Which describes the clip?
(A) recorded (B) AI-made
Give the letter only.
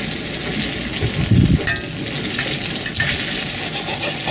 A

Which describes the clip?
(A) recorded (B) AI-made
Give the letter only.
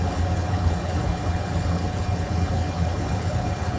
B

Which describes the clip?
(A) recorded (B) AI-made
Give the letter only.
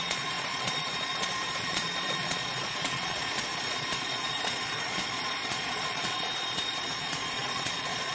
B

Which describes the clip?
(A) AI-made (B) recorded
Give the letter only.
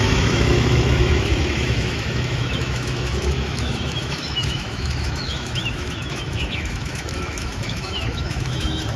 A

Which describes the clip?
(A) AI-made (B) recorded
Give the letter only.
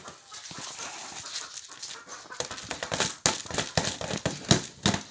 B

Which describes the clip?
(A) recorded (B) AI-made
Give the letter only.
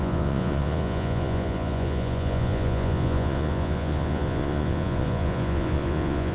B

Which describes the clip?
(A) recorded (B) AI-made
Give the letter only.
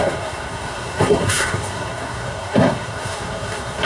B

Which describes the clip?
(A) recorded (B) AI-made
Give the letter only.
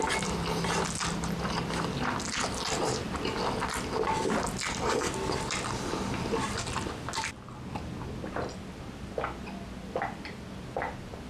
A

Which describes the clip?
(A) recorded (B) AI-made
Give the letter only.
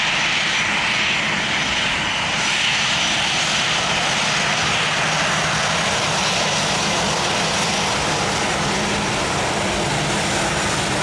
B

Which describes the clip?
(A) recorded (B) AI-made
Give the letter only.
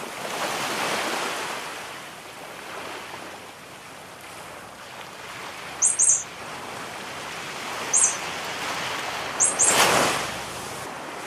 A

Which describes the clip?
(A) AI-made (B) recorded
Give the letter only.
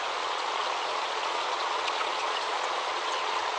A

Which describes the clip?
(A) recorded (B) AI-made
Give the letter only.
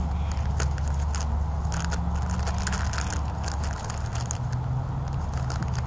A